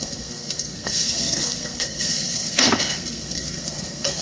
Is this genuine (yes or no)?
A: no